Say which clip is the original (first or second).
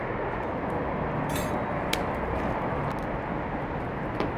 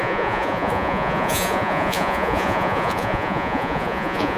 first